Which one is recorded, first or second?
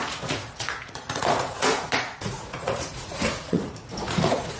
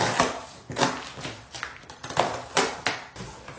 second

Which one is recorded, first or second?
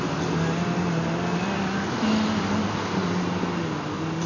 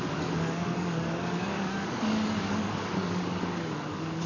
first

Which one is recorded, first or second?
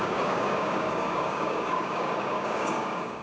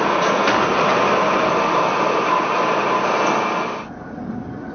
second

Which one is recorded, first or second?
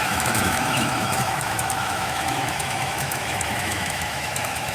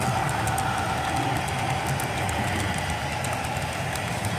second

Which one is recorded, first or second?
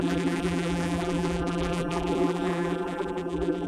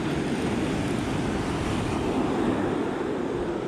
second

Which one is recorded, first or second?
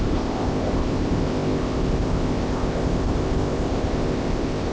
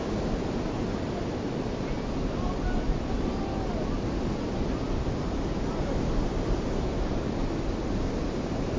second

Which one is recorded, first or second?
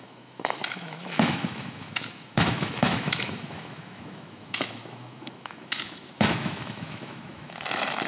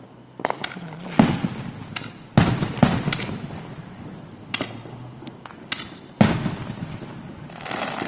second